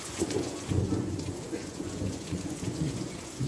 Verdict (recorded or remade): remade